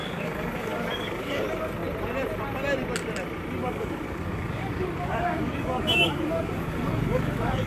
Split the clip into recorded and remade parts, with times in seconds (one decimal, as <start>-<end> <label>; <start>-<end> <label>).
0.0-1.4 remade; 1.4-3.6 recorded; 3.6-7.7 remade